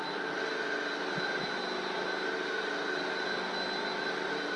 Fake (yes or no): no